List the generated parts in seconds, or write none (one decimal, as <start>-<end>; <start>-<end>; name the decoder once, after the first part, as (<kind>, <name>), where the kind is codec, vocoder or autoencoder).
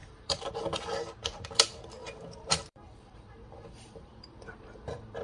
0.0-0.5 (vocoder, BigVGAN v2); 2.0-5.2